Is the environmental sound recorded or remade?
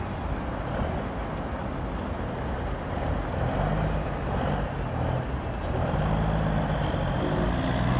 recorded